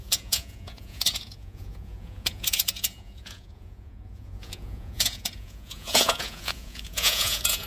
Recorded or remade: remade